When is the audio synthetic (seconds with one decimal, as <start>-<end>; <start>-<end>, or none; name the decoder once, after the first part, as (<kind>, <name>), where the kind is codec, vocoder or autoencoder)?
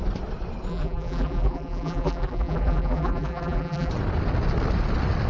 0.7-3.9 (vocoder, BigVGAN v2)